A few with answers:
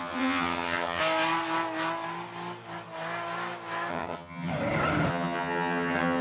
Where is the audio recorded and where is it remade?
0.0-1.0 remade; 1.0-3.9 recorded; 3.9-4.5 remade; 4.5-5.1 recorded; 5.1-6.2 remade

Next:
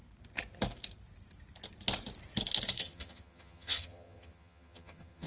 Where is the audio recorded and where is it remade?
0.0-2.8 recorded; 2.8-5.3 remade